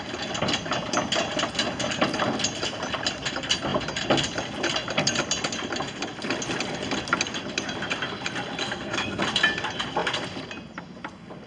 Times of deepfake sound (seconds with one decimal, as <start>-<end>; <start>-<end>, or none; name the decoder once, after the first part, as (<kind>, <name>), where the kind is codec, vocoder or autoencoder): 8.6-9.2 (codec, SNAC)